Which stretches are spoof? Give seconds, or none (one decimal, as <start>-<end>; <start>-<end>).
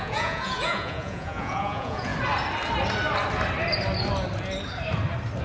0.0-2.1